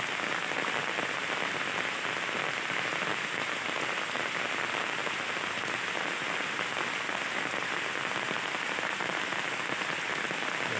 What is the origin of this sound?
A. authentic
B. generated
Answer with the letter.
A